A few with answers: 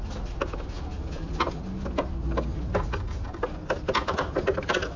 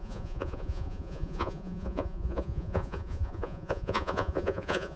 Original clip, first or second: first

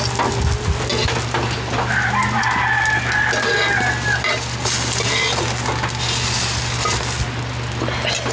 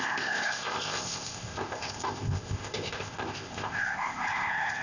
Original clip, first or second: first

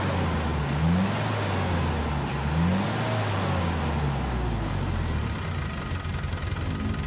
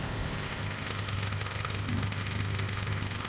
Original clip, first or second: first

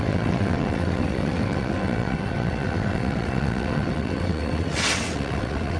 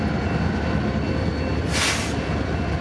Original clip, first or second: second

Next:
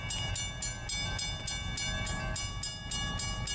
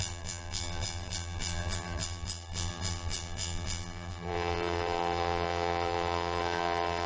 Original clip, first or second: first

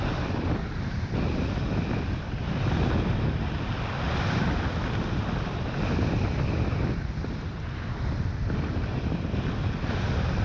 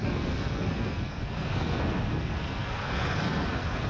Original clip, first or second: first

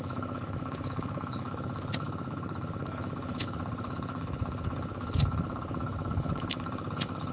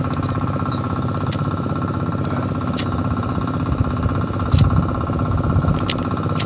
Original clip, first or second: second